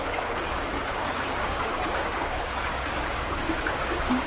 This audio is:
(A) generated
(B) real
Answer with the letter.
A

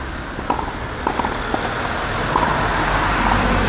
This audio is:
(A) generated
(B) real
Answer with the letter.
B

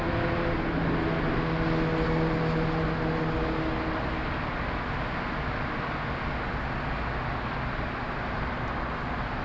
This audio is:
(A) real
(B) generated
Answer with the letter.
A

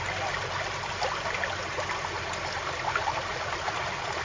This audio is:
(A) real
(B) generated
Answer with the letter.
A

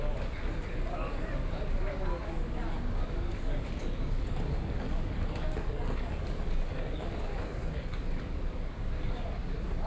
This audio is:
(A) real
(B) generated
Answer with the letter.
B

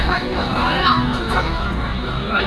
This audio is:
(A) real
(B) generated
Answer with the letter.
B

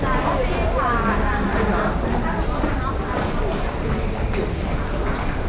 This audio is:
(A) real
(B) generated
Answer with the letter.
A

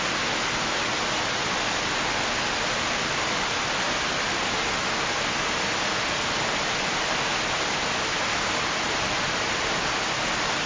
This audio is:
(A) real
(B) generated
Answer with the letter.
A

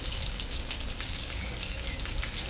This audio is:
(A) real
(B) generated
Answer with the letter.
B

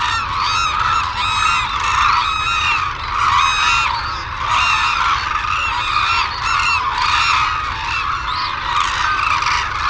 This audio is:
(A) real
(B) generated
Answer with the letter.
A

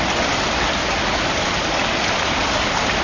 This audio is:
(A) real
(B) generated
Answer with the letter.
A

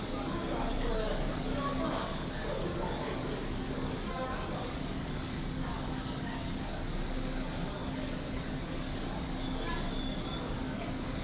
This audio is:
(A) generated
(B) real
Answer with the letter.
A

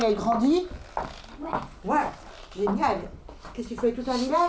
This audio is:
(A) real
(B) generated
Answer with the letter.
A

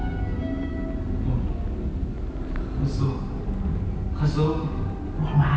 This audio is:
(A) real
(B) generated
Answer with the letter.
A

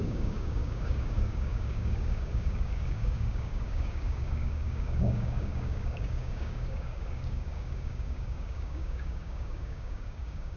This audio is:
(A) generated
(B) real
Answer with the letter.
A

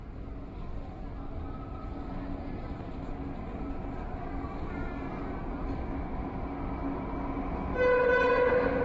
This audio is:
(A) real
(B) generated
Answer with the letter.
A